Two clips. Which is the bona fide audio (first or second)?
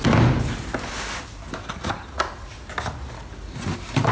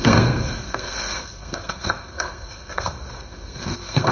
first